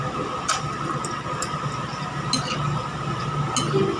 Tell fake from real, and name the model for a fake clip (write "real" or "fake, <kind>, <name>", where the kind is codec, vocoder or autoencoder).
real